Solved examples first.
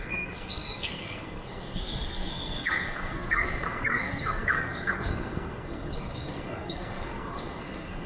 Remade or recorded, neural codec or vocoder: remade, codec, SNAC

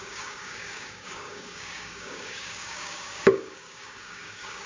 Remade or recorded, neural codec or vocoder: remade, codec, DAC